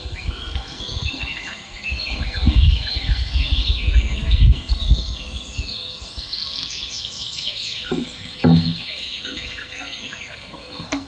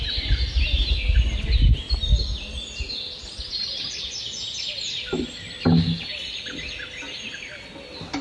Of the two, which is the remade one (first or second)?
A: first